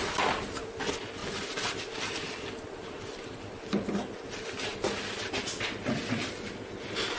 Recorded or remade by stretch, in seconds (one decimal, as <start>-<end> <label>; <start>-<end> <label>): 0.0-1.2 recorded; 1.2-3.5 remade; 3.5-4.7 recorded; 4.7-5.2 remade; 5.2-7.2 recorded